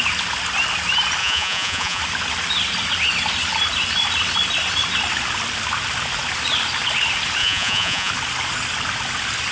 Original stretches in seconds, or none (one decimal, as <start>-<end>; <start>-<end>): 0.0-1.2; 2.0-7.4; 8.1-9.5